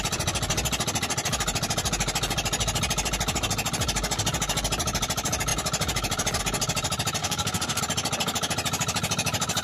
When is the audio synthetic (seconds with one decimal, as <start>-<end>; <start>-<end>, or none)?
7.2-7.8